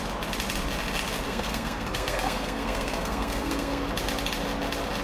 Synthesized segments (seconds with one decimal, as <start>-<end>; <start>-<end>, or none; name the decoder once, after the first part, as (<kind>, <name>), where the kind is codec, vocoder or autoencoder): 1.3-3.9 (codec, SNAC)